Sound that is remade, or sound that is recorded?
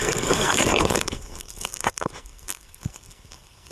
remade